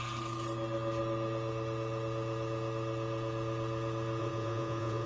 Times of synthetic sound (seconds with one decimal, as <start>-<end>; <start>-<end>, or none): 4.2-5.1